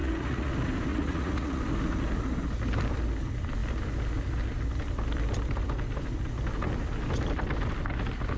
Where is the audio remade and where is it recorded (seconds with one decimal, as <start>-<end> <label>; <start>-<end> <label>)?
0.0-0.5 remade; 0.5-0.9 recorded; 0.9-1.6 remade; 1.6-8.4 recorded